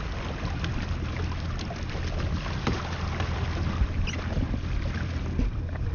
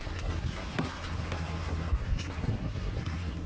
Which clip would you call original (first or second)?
first